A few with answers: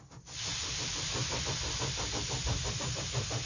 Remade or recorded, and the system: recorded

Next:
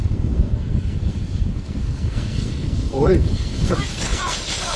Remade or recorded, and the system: remade, codec, SNAC